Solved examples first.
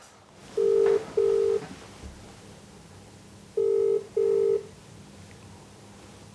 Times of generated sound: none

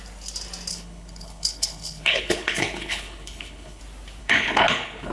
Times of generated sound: 0.7-3.8 (codec, HILCodec); 4.2-5.1

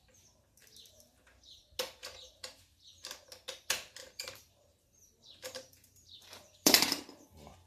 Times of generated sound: 2.0-2.6 (vocoder, BigVGAN v2); 4.0-7.2

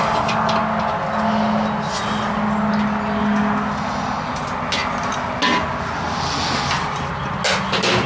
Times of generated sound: none

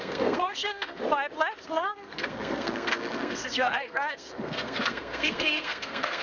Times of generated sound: 0.0-1.0 (codec, SNAC); 1.6-6.2